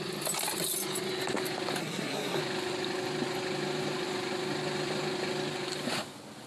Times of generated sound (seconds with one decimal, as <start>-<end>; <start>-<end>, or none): 1.8-2.4